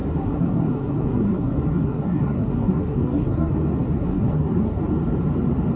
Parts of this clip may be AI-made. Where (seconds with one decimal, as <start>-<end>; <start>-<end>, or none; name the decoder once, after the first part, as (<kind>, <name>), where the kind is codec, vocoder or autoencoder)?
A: 0.0-3.5 (codec, SNAC); 4.0-4.8